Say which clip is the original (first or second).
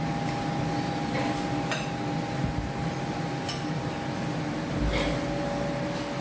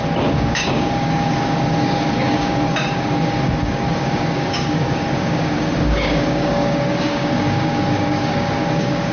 first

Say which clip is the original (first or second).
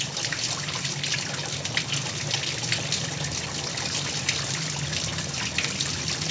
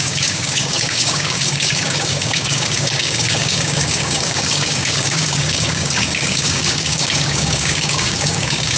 first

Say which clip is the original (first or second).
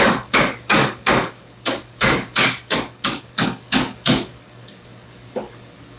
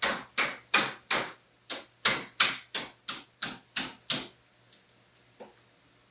second